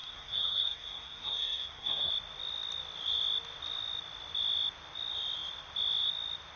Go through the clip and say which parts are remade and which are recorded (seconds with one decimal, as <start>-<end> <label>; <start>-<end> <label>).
0.0-2.1 remade; 2.1-6.6 recorded